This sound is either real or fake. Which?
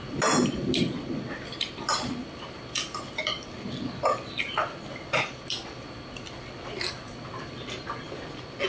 real